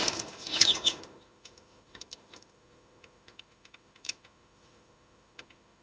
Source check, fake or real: fake